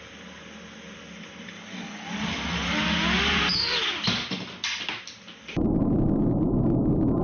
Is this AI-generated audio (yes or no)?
no